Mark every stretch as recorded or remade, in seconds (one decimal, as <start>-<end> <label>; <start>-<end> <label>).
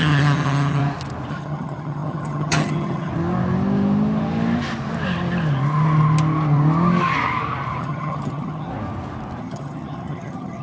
0.0-0.8 remade; 0.8-1.3 recorded; 1.3-3.1 remade; 3.1-7.8 recorded; 7.8-8.7 remade; 8.7-9.4 recorded; 9.4-10.6 remade